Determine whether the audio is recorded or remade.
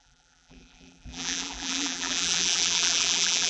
remade